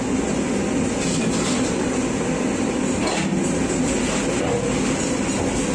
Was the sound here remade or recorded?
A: recorded